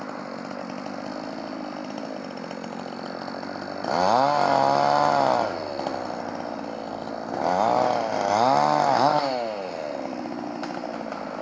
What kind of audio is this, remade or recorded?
recorded